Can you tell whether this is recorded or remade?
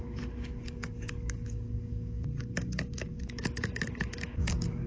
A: remade